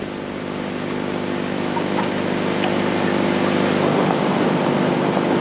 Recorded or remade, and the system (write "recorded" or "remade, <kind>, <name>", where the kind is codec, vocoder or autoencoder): recorded